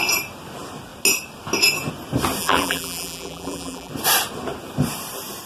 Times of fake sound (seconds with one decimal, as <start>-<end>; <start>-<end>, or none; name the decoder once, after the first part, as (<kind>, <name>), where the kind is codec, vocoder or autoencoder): 2.4-3.9 (vocoder, BigVGAN v2)